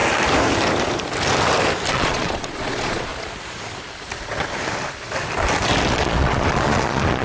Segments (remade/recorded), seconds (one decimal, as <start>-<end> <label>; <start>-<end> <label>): 0.0-1.9 recorded; 1.9-3.1 remade; 3.1-5.9 recorded; 5.9-7.2 remade